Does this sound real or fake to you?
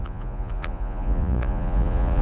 fake